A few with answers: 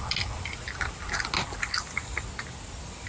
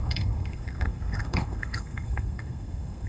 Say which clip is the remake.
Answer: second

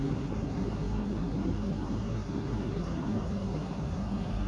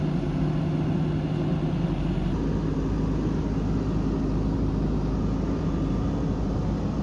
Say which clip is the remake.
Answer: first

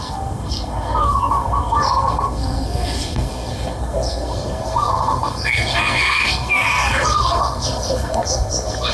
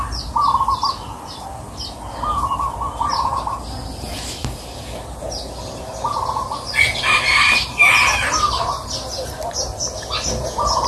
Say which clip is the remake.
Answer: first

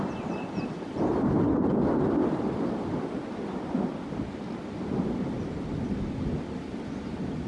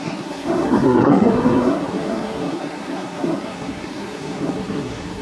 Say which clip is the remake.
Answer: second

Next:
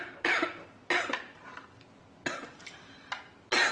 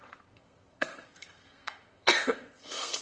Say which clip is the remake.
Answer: second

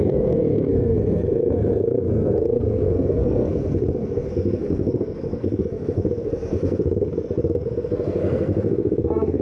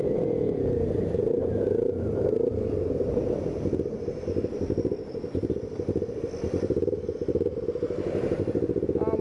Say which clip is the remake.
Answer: first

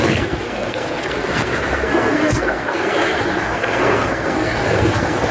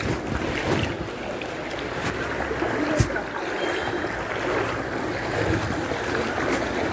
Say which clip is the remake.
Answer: first